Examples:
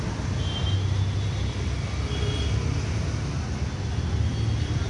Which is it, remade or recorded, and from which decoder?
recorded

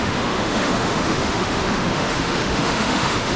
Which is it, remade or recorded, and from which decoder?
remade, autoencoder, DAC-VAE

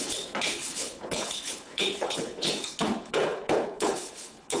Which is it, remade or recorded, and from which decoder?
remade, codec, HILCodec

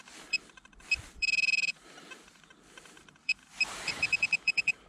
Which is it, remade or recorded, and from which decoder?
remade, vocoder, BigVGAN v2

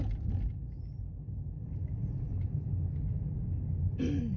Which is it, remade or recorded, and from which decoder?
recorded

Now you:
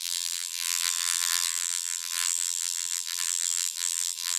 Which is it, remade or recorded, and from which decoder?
remade, vocoder, BigVGAN v2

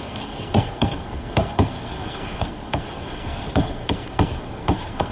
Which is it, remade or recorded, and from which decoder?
remade, codec, SNAC